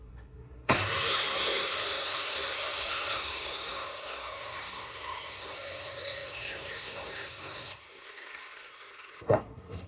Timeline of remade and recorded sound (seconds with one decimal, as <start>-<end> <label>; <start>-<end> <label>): 0.0-9.9 remade